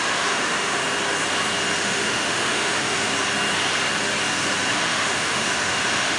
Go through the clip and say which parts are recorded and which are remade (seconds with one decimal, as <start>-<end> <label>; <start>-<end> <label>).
0.0-0.8 remade; 0.8-1.8 recorded; 1.8-3.1 remade; 3.1-4.7 recorded; 4.7-6.2 remade